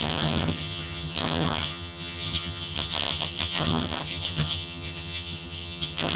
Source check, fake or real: fake